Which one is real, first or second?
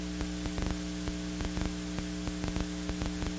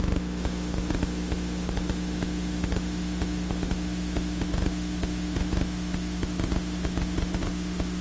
first